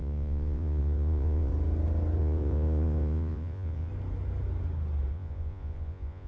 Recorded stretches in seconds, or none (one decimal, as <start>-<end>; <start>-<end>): 1.5-2.2; 3.9-5.1